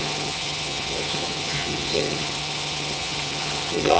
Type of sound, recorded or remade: remade